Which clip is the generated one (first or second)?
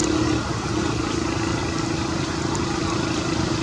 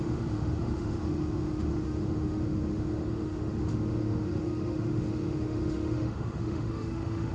second